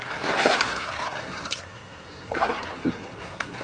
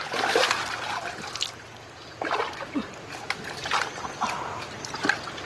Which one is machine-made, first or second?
first